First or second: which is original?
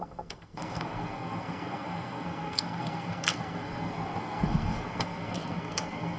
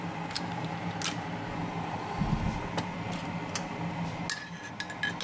second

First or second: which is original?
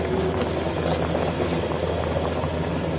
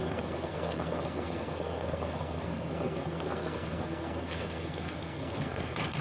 first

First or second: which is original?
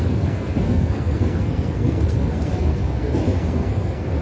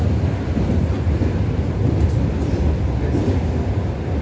second